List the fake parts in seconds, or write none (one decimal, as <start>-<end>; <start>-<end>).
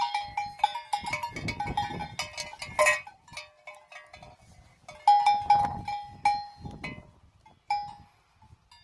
none